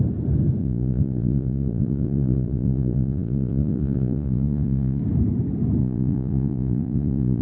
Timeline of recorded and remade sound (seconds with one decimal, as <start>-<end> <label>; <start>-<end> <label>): 0.0-0.6 recorded; 0.6-5.0 remade; 5.0-5.8 recorded; 5.8-7.4 remade